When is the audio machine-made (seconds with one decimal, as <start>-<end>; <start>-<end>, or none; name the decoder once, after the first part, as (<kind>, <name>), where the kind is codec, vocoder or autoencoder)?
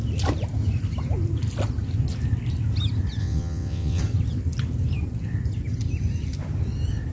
3.2-4.0 (vocoder, WaveNeXt)